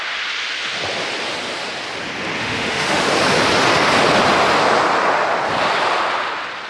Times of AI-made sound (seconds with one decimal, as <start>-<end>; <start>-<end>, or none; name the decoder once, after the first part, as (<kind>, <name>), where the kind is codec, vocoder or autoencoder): 2.4-3.1 (autoencoder, DAC-VAE)